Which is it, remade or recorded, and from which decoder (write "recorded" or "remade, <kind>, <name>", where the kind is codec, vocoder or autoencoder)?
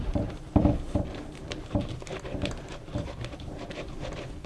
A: recorded